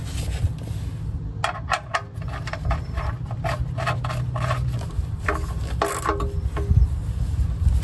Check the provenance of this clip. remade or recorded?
recorded